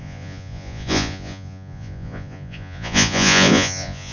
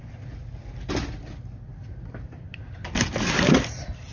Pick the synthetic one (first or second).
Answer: first